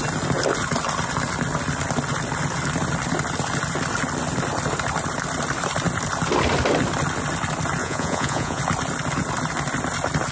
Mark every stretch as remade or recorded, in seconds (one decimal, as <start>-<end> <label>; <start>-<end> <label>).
0.0-7.8 recorded; 7.8-8.6 remade; 8.6-10.3 recorded

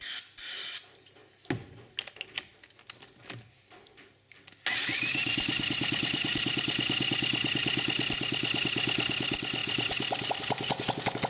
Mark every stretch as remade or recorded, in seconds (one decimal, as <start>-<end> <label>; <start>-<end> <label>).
0.0-11.3 recorded

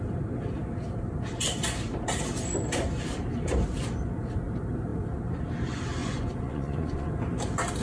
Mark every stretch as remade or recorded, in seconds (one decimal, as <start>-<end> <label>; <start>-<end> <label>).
0.0-6.0 recorded; 6.0-7.1 remade; 7.1-7.8 recorded

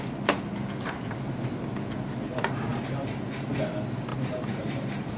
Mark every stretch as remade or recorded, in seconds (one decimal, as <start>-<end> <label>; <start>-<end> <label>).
0.0-2.7 recorded; 2.7-3.5 remade; 3.5-4.1 recorded; 4.1-5.2 remade

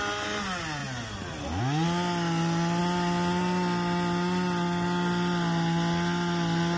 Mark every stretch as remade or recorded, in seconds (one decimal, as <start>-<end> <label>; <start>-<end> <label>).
0.0-6.8 recorded

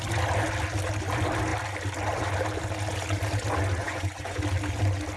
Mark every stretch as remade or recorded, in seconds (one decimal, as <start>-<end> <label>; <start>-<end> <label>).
0.0-3.8 recorded; 3.8-4.4 remade; 4.4-5.2 recorded

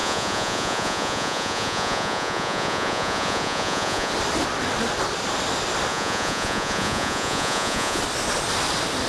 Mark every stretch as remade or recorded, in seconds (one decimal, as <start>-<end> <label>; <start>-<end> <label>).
0.0-4.1 remade; 4.1-5.9 recorded; 5.9-8.0 remade; 8.0-9.1 recorded

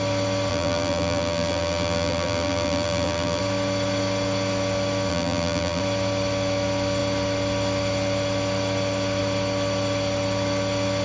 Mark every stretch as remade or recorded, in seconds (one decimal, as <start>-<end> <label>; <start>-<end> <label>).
0.0-0.5 recorded; 0.5-3.4 remade; 3.4-5.1 recorded; 5.1-5.8 remade; 5.8-11.0 recorded